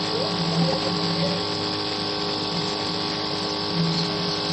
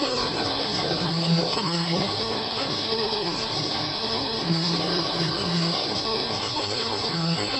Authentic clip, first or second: first